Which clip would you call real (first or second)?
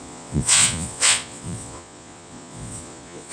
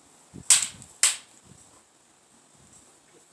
second